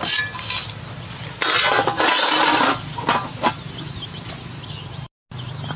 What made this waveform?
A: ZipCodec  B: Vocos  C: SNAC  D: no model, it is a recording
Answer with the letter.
D